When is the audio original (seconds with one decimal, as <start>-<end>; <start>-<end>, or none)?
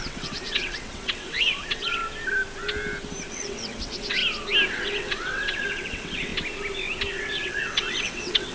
2.0-3.3; 4.2-4.7; 6.3-7.1